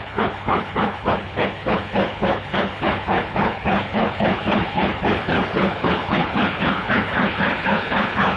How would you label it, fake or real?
fake